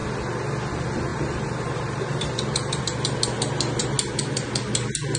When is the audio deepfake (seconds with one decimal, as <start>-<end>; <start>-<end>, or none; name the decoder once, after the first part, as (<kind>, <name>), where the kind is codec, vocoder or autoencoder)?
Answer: 1.1-2.8 (vocoder, BigVGAN v2)